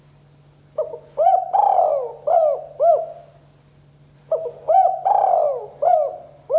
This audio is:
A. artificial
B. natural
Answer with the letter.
B